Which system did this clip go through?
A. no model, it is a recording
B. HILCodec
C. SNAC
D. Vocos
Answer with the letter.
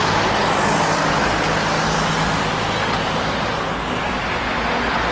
A